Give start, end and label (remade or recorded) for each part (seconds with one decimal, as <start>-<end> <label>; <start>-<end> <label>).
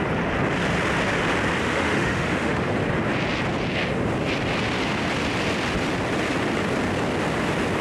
0.0-1.6 recorded; 1.6-2.7 remade; 2.7-7.8 recorded